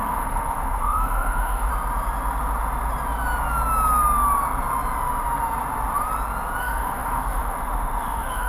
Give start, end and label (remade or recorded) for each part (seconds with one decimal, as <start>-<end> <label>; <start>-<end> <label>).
0.0-1.7 remade; 1.7-6.6 recorded; 6.6-8.5 remade